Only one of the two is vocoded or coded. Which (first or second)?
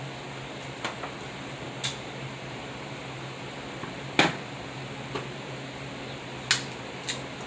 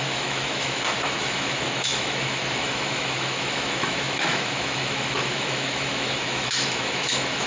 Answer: second